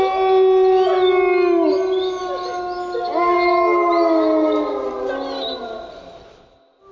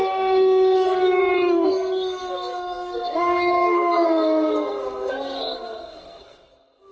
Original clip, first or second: first